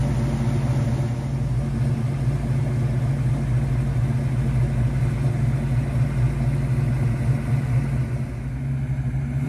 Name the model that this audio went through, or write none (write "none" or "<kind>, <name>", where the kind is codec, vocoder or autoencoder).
none